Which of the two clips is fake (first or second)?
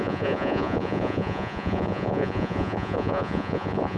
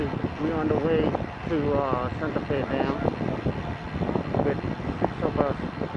first